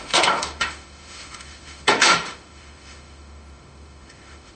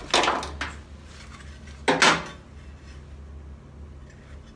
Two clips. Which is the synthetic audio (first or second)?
first